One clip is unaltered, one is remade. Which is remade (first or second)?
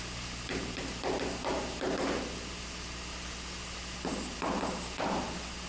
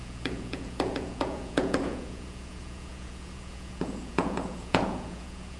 second